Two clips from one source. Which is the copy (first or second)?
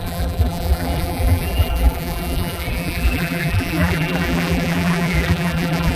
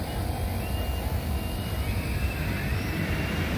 first